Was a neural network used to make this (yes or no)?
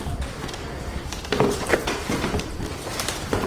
yes